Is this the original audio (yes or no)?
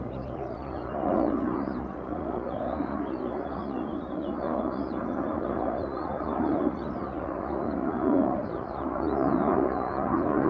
no